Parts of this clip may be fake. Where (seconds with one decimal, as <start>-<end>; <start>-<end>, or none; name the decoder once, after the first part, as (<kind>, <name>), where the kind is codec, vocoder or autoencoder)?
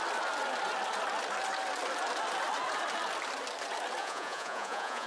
4.0-5.1 (vocoder, Vocos)